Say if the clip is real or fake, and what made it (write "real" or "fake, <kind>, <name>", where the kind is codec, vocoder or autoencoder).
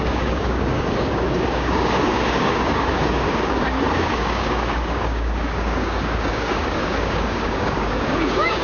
fake, codec, DAC